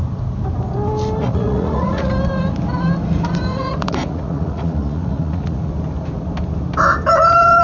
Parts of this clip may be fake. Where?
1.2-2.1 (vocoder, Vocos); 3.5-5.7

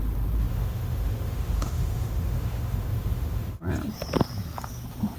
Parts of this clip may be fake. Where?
0.5-3.6 (autoencoder, DAC-VAE)